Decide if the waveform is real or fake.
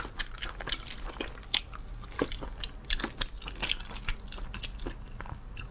real